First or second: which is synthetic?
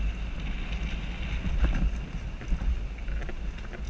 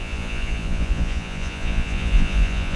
second